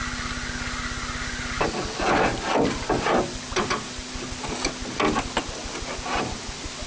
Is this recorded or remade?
recorded